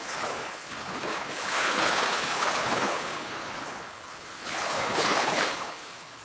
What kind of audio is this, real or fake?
fake